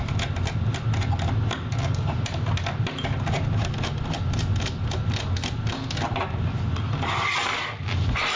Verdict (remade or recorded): recorded